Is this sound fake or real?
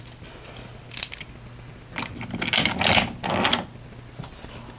real